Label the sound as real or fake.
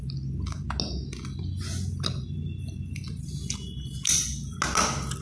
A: real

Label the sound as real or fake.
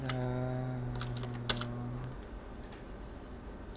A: real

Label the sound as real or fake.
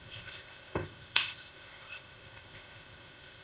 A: fake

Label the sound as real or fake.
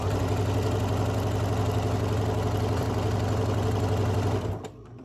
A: real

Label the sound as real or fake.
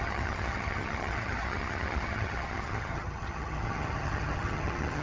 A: fake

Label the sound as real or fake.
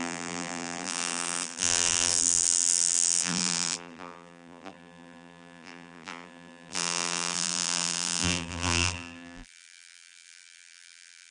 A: fake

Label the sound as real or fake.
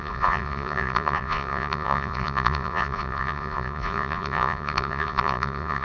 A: fake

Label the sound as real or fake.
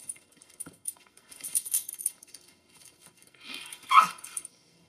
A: fake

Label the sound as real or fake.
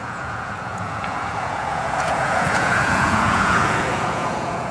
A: fake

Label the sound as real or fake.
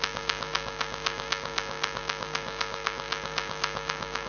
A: fake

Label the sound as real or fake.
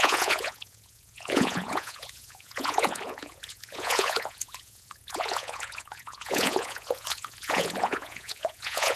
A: fake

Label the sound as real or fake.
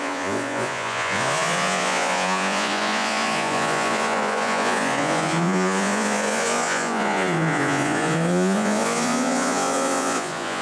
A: fake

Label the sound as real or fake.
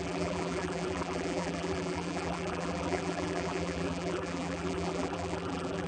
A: fake